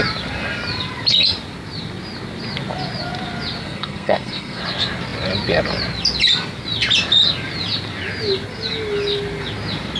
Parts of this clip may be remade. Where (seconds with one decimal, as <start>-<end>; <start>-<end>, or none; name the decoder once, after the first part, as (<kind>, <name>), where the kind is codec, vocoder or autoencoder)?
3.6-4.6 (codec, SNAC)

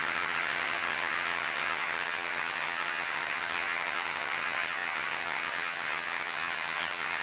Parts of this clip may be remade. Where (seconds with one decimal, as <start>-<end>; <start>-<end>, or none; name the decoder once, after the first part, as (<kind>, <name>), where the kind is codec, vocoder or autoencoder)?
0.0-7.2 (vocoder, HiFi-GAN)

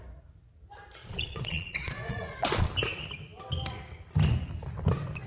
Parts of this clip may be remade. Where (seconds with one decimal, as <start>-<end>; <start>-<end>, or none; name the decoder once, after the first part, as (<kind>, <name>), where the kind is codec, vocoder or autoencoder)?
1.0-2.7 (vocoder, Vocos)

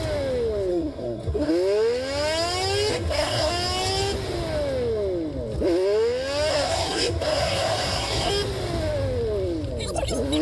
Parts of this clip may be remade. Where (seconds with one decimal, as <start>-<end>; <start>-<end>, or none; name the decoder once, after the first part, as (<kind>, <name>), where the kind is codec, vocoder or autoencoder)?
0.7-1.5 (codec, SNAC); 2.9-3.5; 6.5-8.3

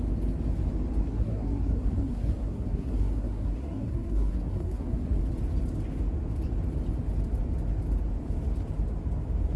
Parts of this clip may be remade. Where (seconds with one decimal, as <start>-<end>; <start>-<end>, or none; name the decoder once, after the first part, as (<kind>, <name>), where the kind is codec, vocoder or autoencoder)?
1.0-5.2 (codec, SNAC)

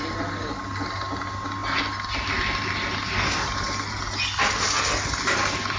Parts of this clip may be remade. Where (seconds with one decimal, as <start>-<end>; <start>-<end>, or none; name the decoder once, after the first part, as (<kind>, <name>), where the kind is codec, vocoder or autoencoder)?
none